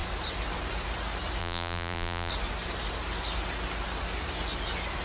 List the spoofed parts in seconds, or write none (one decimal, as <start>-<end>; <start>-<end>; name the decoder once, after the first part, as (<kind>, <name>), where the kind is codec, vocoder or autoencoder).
1.4-2.3 (vocoder, BigVGAN v2)

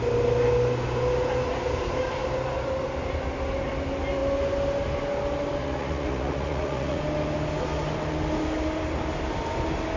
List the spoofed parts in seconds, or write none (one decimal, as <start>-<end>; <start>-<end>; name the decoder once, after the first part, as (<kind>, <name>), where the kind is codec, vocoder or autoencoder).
5.6-7.0 (vocoder, Vocos)

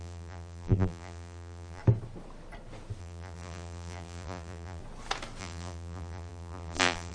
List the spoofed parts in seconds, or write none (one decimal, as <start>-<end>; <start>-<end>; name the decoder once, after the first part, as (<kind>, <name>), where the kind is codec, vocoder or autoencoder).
0.0-1.8 (vocoder, BigVGAN v2); 3.0-4.8; 5.4-7.1

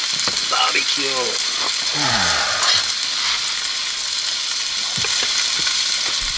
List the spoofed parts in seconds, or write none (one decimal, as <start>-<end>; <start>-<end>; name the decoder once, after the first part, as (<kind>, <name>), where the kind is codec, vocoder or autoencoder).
none